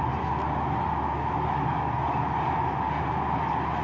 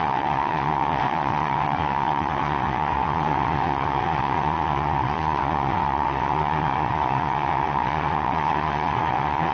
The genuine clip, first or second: first